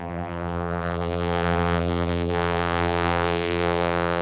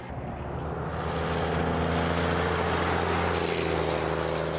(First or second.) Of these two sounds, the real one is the second